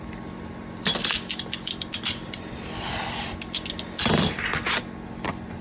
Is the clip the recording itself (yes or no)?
yes